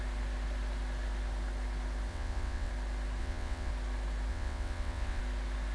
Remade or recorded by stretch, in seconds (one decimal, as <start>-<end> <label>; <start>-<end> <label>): 0.0-2.1 recorded; 2.1-2.7 remade; 2.7-3.2 recorded; 3.2-3.7 remade; 3.7-4.3 recorded; 4.3-5.2 remade; 5.2-5.7 recorded